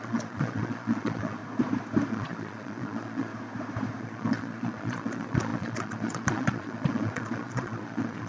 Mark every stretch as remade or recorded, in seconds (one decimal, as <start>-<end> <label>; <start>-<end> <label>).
0.0-1.4 remade; 1.4-2.1 recorded; 2.1-3.3 remade; 3.3-4.0 recorded; 4.0-8.3 remade